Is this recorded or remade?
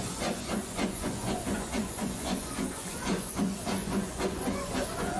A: remade